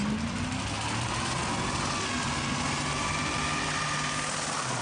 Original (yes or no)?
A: yes